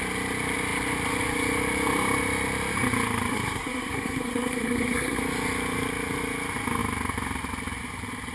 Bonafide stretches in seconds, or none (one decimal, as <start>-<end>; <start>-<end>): 0.0-3.3; 5.2-8.3